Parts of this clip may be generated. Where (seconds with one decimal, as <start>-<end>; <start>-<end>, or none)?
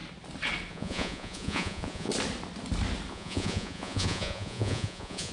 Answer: 0.7-2.1; 3.1-5.3